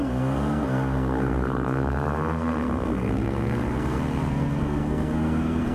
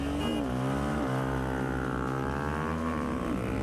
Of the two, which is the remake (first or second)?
first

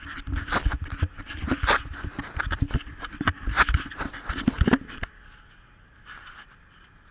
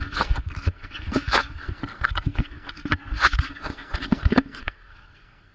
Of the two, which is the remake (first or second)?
second